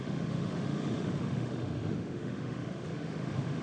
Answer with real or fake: fake